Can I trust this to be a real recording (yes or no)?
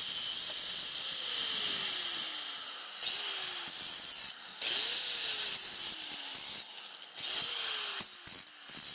yes